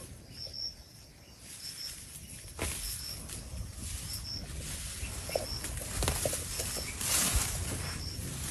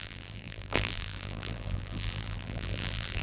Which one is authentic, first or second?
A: first